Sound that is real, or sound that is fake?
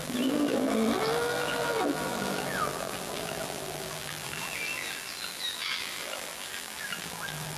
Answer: fake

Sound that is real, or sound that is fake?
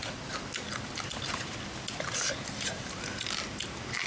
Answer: real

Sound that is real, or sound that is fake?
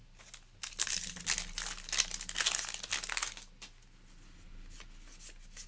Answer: real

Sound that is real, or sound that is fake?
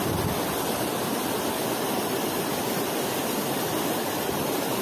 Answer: real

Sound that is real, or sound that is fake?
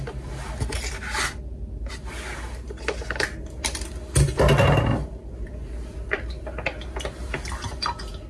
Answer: real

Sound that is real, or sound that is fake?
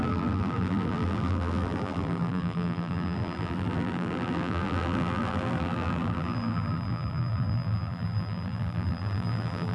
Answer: fake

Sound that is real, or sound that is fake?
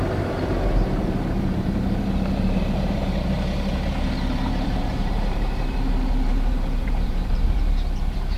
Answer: fake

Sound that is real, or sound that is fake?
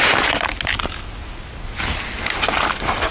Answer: real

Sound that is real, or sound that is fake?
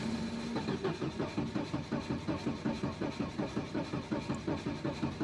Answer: real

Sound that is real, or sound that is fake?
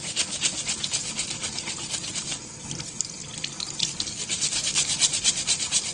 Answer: real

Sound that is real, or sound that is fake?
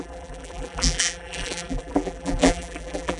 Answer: fake